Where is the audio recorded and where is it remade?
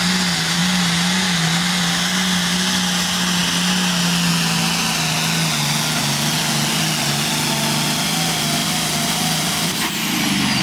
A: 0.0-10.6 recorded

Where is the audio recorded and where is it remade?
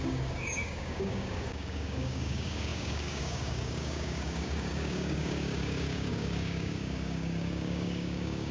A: 0.0-8.5 remade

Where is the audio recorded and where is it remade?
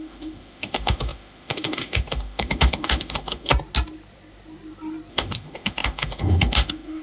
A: 0.0-3.5 remade; 3.5-5.1 recorded; 5.1-7.0 remade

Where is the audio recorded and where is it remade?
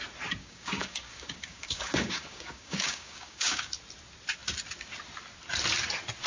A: 0.0-0.4 recorded; 0.4-3.7 remade; 3.7-6.3 recorded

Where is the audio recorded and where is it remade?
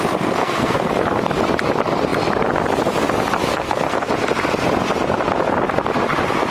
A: 0.0-0.4 recorded; 0.4-0.9 remade; 0.9-3.5 recorded; 3.5-4.1 remade; 4.1-6.5 recorded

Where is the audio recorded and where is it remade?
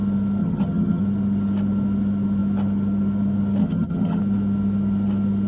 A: 0.0-0.4 recorded; 0.4-1.0 remade; 1.0-3.6 recorded; 3.6-4.2 remade; 4.2-5.5 recorded